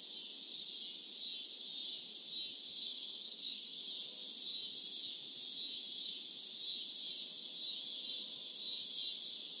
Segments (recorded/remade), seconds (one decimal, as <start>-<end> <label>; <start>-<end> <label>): 0.0-2.8 recorded; 2.8-3.8 remade; 3.8-9.6 recorded